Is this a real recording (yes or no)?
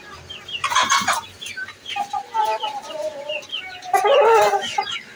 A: no